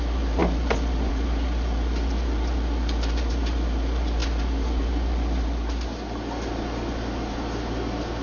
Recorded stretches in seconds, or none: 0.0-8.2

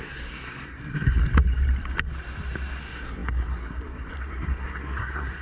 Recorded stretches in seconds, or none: 1.2-2.8

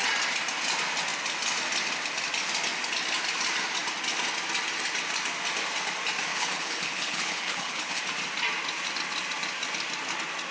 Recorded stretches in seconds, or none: 0.0-6.3; 8.0-10.5

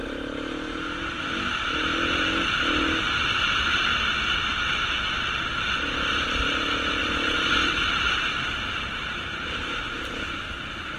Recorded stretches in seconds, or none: 1.3-7.0; 7.5-9.0; 10.3-11.0

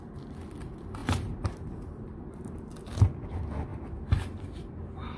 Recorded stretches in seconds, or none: 0.0-1.0; 2.7-5.2

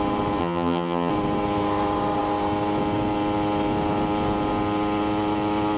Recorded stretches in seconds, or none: 0.0-0.4; 1.1-5.8

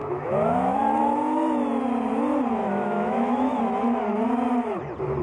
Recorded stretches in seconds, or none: 0.8-2.6; 3.6-5.2

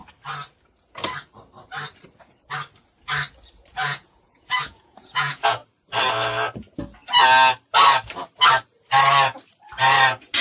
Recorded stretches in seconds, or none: 0.0-3.7; 5.6-10.4